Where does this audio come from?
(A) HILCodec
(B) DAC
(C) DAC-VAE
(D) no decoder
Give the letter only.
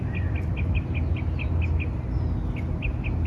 D